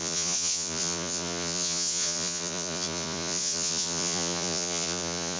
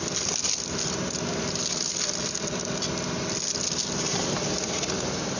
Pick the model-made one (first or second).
first